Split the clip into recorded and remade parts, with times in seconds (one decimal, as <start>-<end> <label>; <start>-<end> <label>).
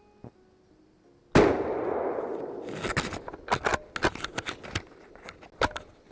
0.0-6.1 recorded